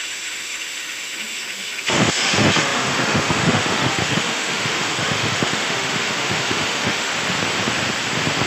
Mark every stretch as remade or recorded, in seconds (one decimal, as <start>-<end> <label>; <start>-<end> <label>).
0.0-7.1 remade; 7.1-8.5 recorded